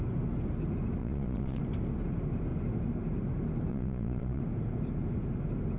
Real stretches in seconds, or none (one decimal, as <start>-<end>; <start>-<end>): 0.0-1.0; 1.6-3.7; 4.4-5.8